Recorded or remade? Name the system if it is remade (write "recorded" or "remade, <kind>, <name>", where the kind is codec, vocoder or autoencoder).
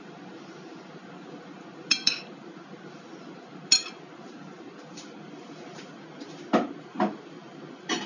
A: recorded